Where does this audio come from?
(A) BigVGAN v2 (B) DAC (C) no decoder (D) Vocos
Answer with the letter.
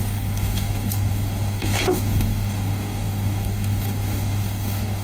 B